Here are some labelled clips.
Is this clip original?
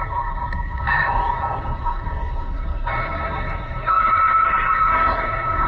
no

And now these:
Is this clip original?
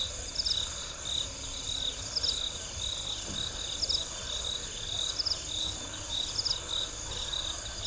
yes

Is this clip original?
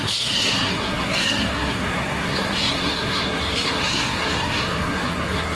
no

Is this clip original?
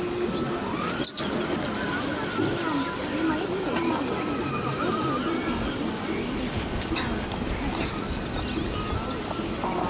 yes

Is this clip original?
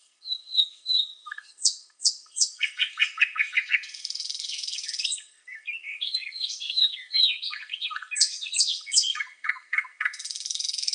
no